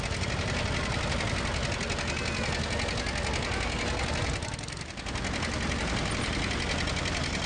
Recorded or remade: recorded